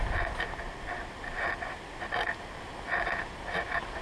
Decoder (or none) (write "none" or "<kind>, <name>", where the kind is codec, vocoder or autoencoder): none